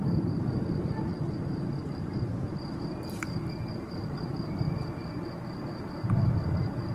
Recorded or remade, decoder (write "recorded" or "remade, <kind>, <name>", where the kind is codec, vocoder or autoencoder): remade, vocoder, BigVGAN v2